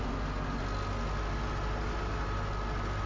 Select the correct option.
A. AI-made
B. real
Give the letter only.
B